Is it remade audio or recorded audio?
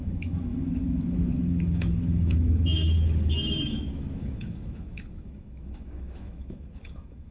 remade